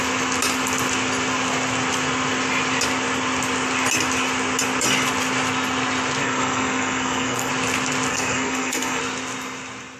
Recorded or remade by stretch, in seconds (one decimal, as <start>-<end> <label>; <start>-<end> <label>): 0.0-6.2 recorded; 6.2-7.5 remade; 7.5-8.1 recorded; 8.1-9.0 remade; 9.0-10.0 recorded